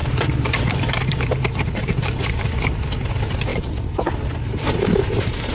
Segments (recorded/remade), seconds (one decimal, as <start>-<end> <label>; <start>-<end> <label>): 0.0-5.5 remade